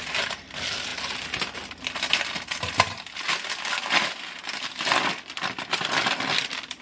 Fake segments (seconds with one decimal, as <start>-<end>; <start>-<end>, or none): none